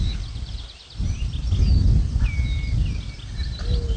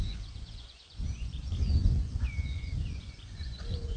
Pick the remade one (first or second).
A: second